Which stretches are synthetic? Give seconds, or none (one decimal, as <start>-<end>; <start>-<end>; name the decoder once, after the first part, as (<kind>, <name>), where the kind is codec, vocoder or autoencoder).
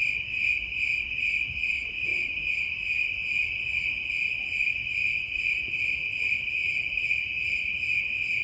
5.0-5.7 (vocoder, Vocos); 6.6-7.9